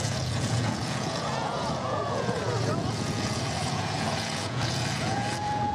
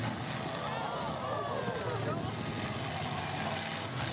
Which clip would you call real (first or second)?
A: second